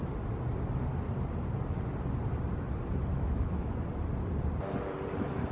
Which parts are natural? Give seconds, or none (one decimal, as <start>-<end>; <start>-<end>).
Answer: 0.0-3.1; 3.7-5.5

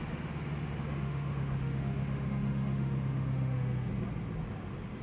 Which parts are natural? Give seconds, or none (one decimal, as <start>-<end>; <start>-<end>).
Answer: 0.0-0.9; 3.9-5.0

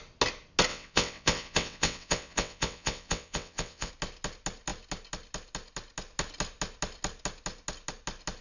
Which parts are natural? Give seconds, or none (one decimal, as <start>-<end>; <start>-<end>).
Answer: 0.0-0.7; 3.9-8.4

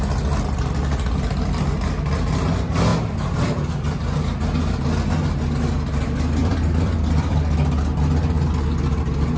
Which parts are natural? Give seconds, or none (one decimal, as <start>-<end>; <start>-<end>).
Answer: 0.0-6.4; 7.5-9.4